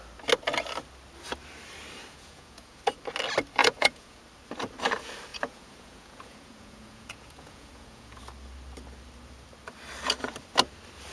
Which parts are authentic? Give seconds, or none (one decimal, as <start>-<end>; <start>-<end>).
0.0-2.1; 2.8-3.6; 4.2-5.3; 8.2-11.1